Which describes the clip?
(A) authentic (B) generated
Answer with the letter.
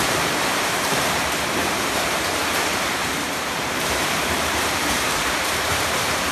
B